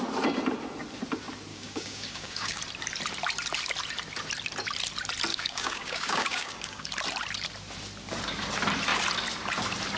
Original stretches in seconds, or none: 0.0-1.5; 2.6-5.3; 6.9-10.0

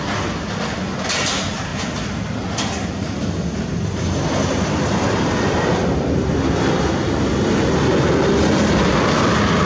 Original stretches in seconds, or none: 0.0-9.7

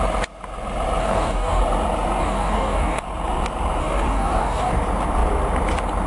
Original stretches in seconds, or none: 0.0-1.0; 1.6-2.2; 3.0-3.8; 4.7-6.1

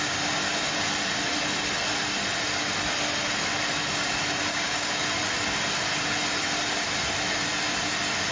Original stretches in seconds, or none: 0.0-4.5; 5.0-8.3

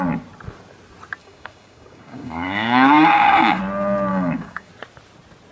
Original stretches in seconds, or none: 0.0-1.2; 3.6-4.1; 4.7-5.5